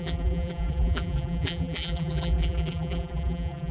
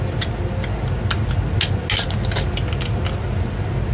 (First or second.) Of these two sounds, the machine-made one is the first